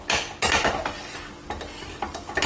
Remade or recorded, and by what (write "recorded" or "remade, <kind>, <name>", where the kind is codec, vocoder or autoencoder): recorded